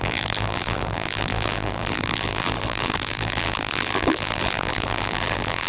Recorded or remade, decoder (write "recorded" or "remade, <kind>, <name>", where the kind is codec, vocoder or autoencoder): remade, vocoder, BigVGAN v2